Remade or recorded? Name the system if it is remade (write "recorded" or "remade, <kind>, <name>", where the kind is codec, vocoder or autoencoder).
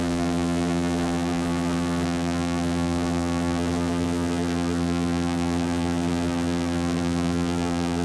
remade, vocoder, BigVGAN v2